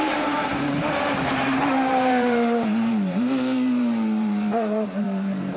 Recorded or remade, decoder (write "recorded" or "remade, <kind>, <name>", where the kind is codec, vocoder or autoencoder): remade, vocoder, BigVGAN v2